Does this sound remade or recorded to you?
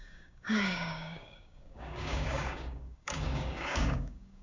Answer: remade